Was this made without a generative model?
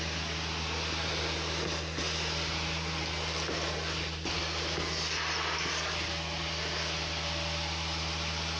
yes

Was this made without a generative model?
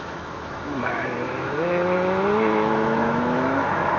no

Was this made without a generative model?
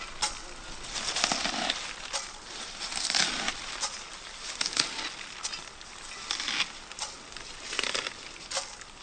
yes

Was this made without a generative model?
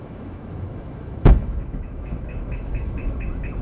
no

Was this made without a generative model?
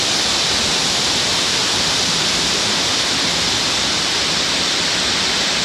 yes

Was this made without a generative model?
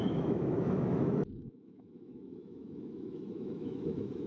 no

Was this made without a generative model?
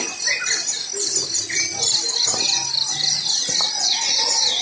yes